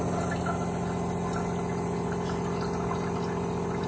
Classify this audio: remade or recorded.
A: recorded